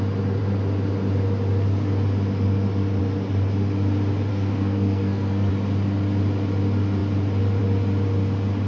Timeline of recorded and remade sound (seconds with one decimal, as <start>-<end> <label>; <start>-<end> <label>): 0.0-4.3 recorded; 4.3-5.5 remade; 5.5-8.7 recorded